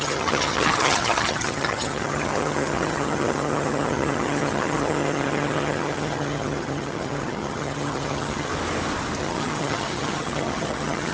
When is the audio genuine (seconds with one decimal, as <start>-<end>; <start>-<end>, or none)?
8.5-9.2